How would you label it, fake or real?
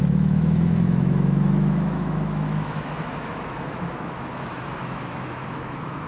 fake